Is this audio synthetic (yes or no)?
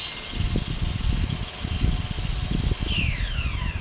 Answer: no